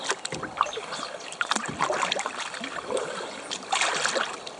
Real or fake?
real